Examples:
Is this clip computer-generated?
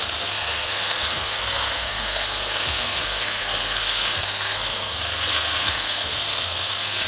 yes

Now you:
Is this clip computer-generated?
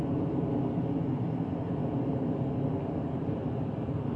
no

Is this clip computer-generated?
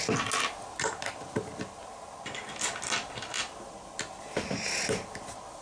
no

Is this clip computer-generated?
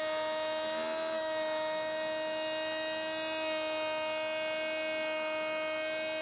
no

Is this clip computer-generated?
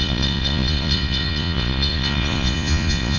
yes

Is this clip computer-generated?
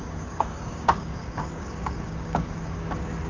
yes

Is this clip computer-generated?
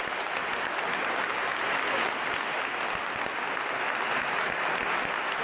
no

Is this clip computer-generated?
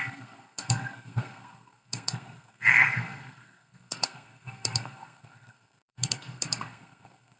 yes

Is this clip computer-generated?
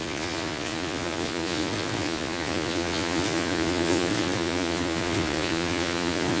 yes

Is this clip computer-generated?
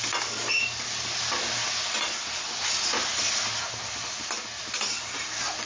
no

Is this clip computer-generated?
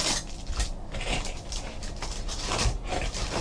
no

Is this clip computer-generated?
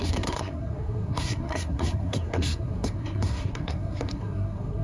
yes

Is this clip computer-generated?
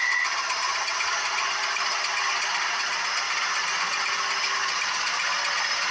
no